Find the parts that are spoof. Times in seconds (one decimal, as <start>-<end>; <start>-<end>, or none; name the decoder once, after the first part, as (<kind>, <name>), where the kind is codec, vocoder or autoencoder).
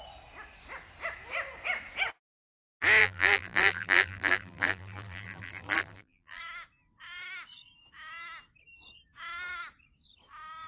3.0-6.4 (vocoder, BigVGAN v2)